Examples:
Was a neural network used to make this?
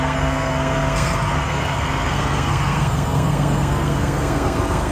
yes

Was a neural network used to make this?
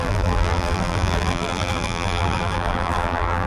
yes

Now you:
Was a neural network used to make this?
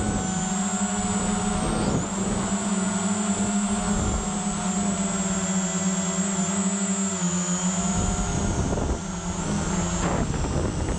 no